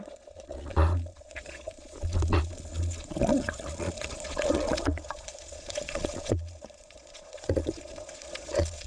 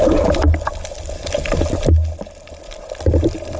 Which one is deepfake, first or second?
first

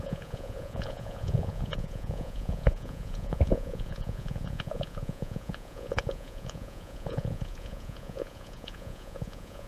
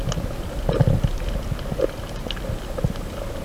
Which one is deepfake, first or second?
first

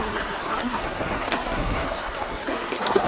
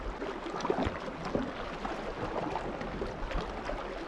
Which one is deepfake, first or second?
first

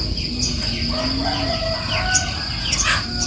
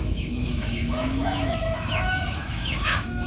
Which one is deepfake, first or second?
second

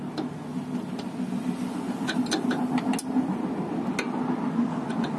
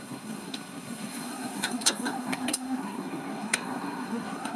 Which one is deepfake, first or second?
second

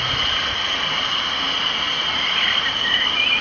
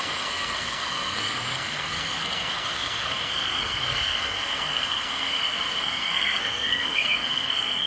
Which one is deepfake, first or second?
second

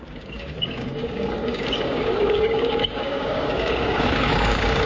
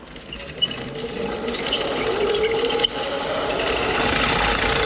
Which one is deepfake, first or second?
first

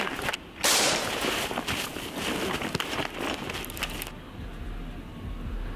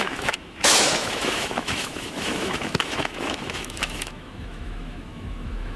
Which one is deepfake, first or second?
second